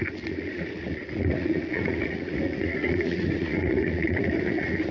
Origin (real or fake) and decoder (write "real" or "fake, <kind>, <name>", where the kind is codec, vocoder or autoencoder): fake, vocoder, Vocos